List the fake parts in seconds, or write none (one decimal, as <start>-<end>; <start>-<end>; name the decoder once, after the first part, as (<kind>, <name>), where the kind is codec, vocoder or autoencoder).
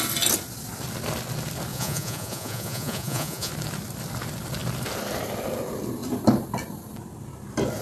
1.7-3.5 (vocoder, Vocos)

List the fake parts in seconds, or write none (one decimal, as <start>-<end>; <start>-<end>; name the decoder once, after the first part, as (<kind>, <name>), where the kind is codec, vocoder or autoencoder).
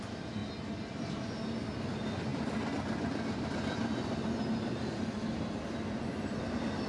none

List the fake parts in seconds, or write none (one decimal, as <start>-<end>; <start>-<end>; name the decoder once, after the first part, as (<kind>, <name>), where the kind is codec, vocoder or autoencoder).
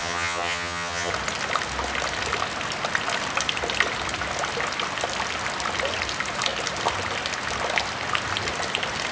0.0-1.1 (vocoder, HiFi-GAN)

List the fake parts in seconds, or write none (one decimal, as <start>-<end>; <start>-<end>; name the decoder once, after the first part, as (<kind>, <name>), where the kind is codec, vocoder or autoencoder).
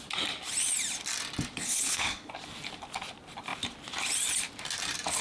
1.6-2.3 (codec, HILCodec)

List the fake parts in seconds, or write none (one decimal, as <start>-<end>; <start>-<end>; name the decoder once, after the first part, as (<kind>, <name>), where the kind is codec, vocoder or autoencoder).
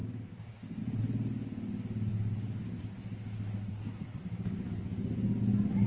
3.7-4.2 (codec, SNAC)